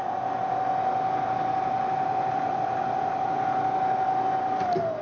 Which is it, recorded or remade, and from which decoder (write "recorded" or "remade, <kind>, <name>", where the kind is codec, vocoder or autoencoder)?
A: recorded